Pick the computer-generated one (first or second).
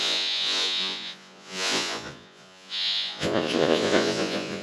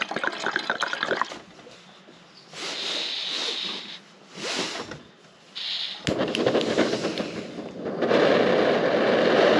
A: first